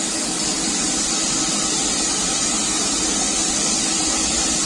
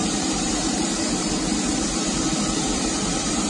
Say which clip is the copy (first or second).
second